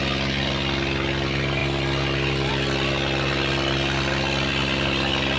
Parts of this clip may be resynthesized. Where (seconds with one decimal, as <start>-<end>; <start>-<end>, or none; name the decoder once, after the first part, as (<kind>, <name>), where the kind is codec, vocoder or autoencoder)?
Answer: none